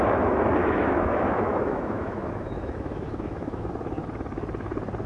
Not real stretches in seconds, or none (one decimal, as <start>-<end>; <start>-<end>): 0.6-3.7

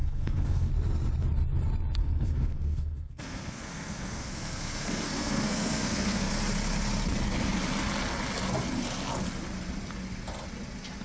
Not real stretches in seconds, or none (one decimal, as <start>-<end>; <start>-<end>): 0.0-0.7; 2.0-6.3

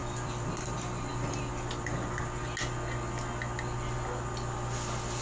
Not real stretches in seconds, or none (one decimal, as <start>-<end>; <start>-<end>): 0.0-1.4

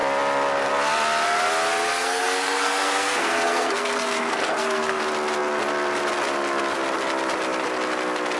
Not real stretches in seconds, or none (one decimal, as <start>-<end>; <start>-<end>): 1.9-5.0